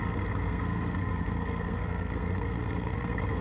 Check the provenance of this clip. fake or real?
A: fake